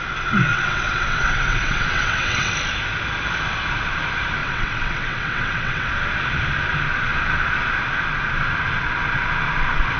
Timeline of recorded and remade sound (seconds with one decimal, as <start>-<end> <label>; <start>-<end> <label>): 0.0-0.5 recorded; 0.5-2.5 remade; 2.5-4.4 recorded; 4.4-5.9 remade; 5.9-10.0 recorded